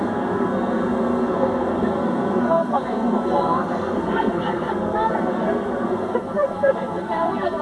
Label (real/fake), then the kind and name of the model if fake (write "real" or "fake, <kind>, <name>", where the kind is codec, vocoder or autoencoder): fake, codec, SNAC